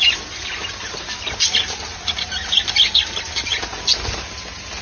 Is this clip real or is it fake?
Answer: real